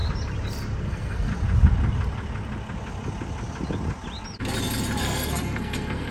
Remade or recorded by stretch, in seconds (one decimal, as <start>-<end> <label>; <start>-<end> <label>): 0.0-0.8 recorded; 0.8-1.3 remade; 1.3-5.0 recorded; 5.0-6.1 remade